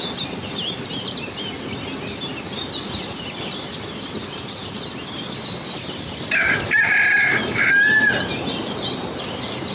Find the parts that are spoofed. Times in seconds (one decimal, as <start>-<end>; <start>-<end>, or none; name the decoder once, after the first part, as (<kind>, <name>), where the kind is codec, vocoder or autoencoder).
none

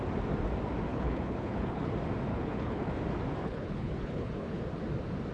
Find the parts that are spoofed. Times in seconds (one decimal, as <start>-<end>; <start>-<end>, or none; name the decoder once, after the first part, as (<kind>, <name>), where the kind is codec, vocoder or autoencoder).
0.9-1.9 (codec, HILCodec); 2.3-2.9; 3.4-4.6